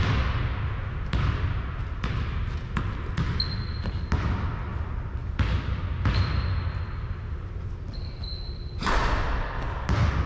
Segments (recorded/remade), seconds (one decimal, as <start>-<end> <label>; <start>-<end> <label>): 0.0-10.3 recorded